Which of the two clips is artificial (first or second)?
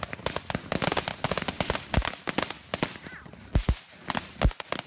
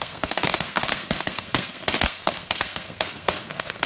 second